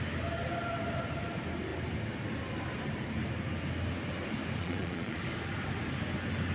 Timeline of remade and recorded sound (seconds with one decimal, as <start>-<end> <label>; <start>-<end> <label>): 0.0-4.6 recorded; 4.6-5.2 remade; 5.2-6.5 recorded